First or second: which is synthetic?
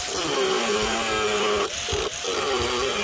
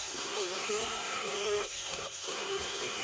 second